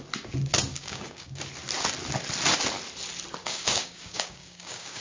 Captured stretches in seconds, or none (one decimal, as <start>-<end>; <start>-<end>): 0.0-0.7; 1.4-3.4